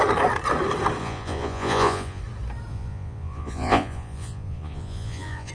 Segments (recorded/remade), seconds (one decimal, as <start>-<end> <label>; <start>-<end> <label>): 0.0-1.0 recorded; 1.0-2.2 remade; 2.2-2.7 recorded; 2.7-5.5 remade